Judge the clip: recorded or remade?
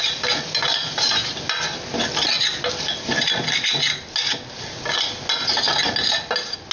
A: recorded